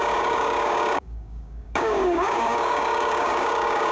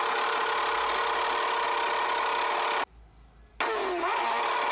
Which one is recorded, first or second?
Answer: second